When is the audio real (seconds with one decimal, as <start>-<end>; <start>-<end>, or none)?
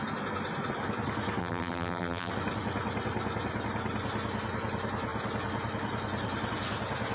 0.0-1.4; 2.3-7.1